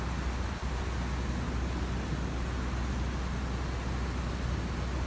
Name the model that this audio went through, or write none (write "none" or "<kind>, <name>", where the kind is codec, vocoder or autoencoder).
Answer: none